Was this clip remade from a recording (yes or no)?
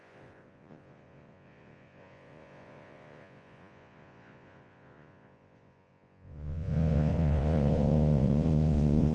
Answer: yes